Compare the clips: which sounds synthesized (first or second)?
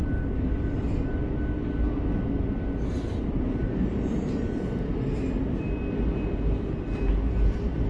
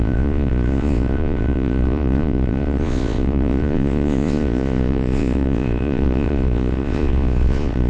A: second